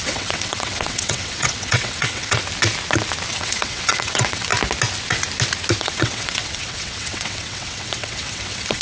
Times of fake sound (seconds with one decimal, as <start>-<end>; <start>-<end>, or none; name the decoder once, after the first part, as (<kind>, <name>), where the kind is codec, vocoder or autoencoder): 0.0-2.4 (vocoder, WaveNeXt); 3.3-4.5; 5.8-8.8